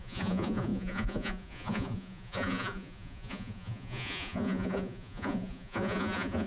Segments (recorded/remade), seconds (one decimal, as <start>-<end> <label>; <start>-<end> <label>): 0.0-6.5 remade